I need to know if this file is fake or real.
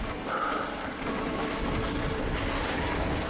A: real